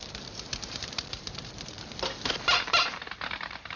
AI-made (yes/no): yes